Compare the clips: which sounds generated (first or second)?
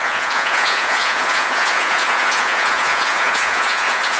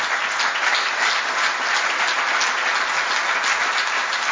first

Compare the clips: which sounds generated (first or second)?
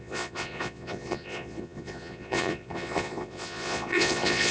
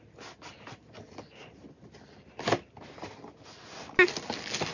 first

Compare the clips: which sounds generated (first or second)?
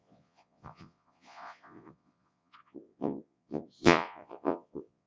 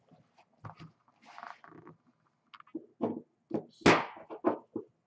first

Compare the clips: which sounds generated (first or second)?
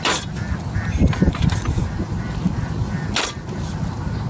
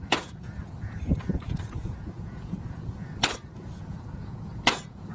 second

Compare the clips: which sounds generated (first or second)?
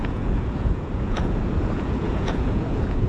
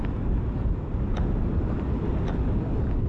first